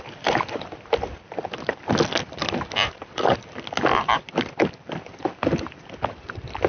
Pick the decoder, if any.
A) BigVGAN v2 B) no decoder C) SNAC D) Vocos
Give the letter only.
B